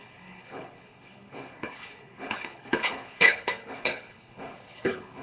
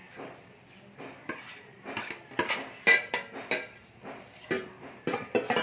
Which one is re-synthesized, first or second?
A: first